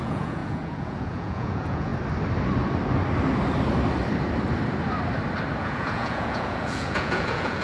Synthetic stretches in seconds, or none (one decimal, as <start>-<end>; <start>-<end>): 0.0-1.9; 5.6-7.6